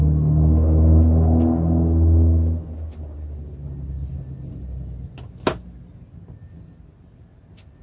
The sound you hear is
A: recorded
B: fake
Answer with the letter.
A